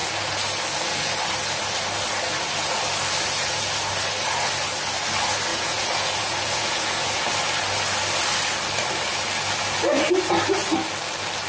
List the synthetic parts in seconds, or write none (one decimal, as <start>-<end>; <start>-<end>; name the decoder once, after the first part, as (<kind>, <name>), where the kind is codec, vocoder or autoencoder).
5.5-7.2 (vocoder, Vocos)